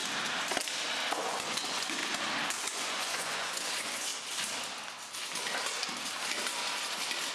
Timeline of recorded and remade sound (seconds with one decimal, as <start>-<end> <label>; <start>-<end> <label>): 0.0-1.3 recorded; 1.3-2.0 remade; 2.0-2.6 recorded; 2.6-4.1 remade; 4.1-7.3 recorded